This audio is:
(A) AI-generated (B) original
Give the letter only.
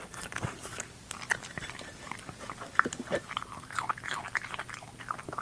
B